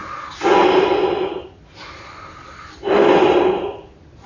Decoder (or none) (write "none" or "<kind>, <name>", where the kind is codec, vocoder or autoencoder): none